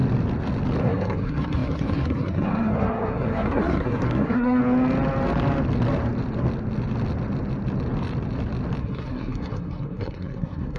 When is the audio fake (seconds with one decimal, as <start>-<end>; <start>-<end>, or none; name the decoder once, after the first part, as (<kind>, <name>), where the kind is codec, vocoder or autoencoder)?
0.8-4.6 (codec, SNAC); 8.8-10.8